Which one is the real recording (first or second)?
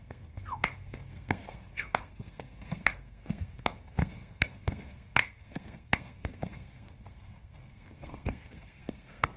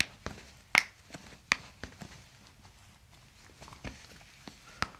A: second